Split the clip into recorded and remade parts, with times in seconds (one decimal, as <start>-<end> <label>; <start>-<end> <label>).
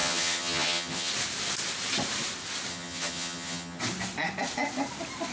0.0-1.1 remade; 1.1-2.7 recorded; 2.7-3.8 remade; 3.8-5.3 recorded